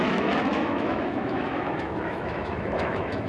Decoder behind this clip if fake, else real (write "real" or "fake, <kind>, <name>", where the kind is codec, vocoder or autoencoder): fake, autoencoder, DAC-VAE